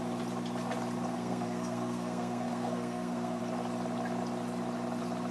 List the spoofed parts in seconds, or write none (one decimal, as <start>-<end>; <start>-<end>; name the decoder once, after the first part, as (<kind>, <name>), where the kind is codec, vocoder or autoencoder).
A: 1.1-3.4 (codec, SNAC)